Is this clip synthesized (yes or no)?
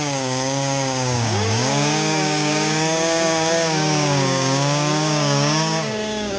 yes